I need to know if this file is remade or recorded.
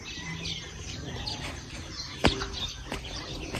recorded